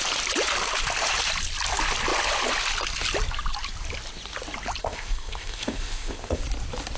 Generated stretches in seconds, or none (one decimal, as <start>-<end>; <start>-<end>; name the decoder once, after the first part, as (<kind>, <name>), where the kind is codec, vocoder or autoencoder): 4.8-6.4 (codec, ZipCodec)